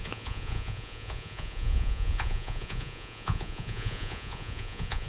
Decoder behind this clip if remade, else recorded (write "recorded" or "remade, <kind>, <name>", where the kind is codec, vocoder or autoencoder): remade, vocoder, Vocos